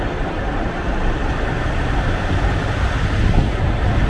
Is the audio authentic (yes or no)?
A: yes